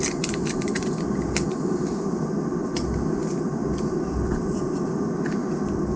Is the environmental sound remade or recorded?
recorded